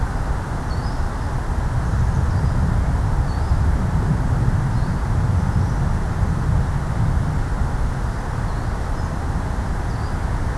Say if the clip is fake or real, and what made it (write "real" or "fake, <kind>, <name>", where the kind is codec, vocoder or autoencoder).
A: real